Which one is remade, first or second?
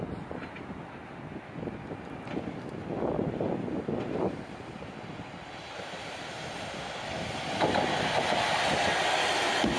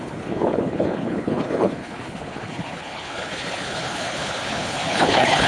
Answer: second